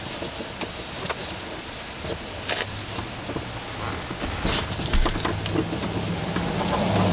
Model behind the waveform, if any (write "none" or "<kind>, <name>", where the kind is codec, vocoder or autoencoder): none